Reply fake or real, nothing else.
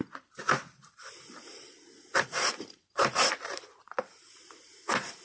fake